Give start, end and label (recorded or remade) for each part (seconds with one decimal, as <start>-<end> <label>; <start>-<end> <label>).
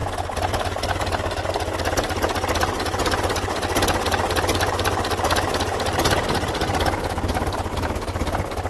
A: 0.0-8.7 recorded